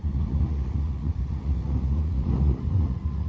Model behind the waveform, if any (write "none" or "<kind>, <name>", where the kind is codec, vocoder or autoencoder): vocoder, Vocos